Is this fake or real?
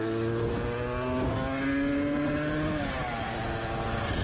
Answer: real